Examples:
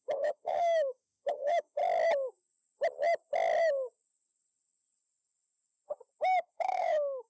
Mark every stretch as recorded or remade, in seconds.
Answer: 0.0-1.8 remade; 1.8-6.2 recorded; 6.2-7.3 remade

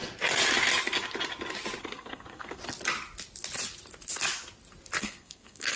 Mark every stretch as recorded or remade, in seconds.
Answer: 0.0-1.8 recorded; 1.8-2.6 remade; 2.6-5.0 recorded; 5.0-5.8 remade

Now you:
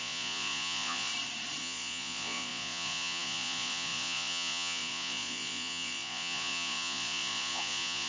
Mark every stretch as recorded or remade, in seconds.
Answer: 0.0-1.1 remade; 1.1-1.6 recorded; 1.6-8.1 remade

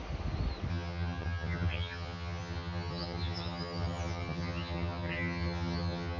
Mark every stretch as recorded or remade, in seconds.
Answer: 0.0-0.7 recorded; 0.7-6.2 remade

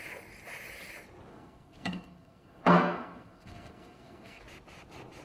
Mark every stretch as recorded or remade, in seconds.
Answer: 0.0-1.3 recorded; 1.3-4.4 remade; 4.4-5.2 recorded